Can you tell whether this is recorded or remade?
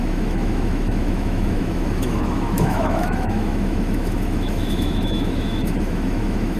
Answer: remade